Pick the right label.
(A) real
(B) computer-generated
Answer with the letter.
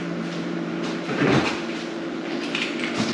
B